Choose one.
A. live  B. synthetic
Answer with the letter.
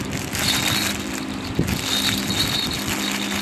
A